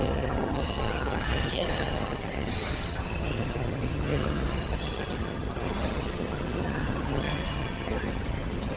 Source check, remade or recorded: remade